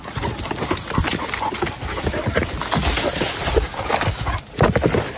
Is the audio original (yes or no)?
yes